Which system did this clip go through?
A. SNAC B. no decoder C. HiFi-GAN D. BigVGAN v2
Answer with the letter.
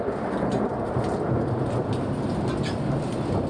B